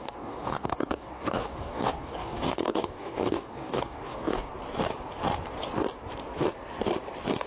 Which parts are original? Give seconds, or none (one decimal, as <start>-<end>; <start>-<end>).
4.5-7.5